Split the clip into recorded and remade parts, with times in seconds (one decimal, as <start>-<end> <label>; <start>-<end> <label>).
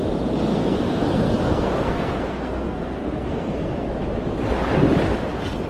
0.0-0.5 recorded; 0.5-3.9 remade; 3.9-5.7 recorded